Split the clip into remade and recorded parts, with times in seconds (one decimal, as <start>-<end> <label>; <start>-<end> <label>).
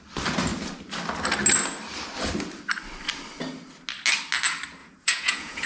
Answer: 0.0-4.8 recorded; 4.8-5.7 remade